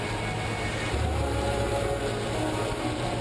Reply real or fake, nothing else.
real